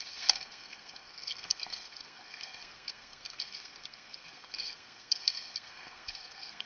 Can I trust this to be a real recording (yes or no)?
no